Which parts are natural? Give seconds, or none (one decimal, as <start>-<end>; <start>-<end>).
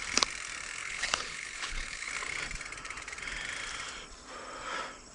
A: 0.0-0.8; 2.1-5.1